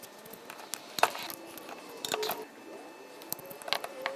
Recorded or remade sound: recorded